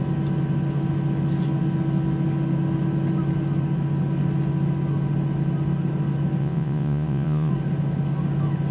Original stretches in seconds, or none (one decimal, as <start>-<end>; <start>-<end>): 0.0-6.4; 7.5-8.7